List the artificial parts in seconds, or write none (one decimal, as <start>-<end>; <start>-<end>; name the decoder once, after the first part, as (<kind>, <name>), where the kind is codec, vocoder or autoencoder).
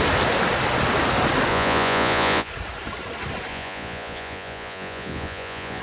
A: 1.5-2.5 (vocoder, Vocos); 3.5-5.8